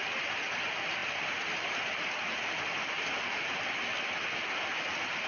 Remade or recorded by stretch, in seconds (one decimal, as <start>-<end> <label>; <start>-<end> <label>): 0.0-5.3 recorded

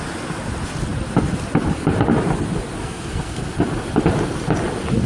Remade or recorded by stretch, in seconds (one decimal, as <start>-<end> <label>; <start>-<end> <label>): 0.0-2.8 recorded; 2.8-3.4 remade; 3.4-5.1 recorded

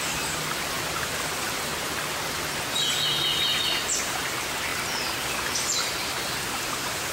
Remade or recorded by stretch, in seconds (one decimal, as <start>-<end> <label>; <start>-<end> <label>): 0.0-1.7 remade; 1.7-4.0 recorded; 4.0-4.7 remade; 4.7-5.3 recorded; 5.3-7.1 remade

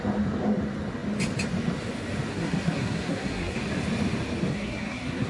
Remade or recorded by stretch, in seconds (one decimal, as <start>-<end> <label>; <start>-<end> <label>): 0.0-2.3 recorded; 2.3-3.6 remade; 3.6-4.5 recorded; 4.5-5.3 remade

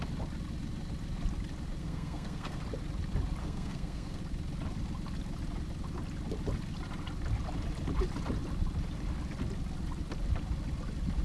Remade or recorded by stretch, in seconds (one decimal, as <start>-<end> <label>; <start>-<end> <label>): 0.0-1.8 recorded; 1.8-2.6 remade; 2.6-3.4 recorded; 3.4-4.2 remade; 4.2-11.2 recorded

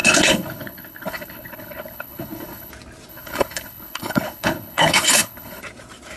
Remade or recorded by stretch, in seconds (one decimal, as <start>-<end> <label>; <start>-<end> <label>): 0.0-2.7 remade; 2.7-3.1 recorded; 3.1-5.6 remade; 5.6-6.2 recorded

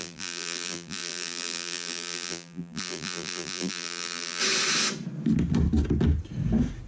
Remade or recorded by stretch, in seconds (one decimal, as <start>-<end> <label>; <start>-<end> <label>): 0.0-4.4 remade; 4.4-6.9 recorded